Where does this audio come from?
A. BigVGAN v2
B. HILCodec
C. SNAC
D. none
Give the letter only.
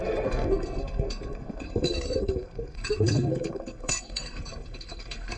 C